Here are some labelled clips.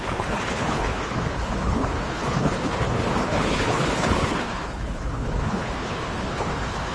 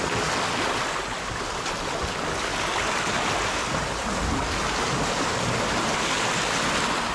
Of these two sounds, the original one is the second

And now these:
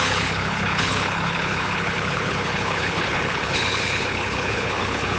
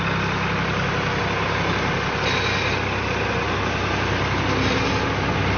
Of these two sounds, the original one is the second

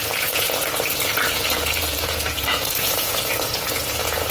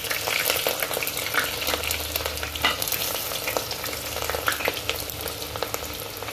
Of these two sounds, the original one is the second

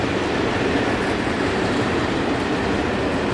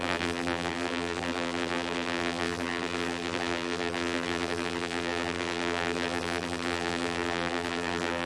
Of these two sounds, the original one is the first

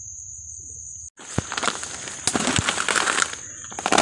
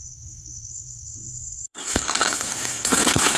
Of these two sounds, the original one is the first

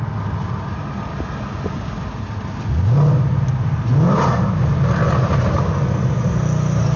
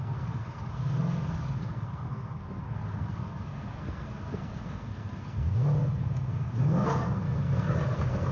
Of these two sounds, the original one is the first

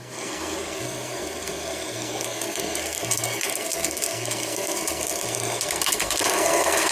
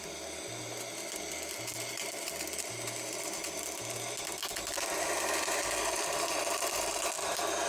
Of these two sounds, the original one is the second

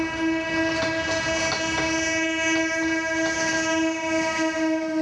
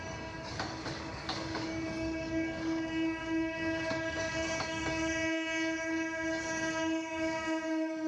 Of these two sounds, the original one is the first